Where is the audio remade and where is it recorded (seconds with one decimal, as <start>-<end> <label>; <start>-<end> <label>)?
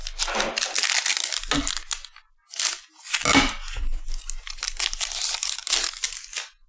0.0-6.7 recorded